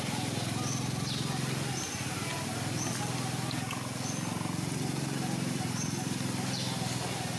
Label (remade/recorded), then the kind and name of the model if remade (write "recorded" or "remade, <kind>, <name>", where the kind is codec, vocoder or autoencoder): recorded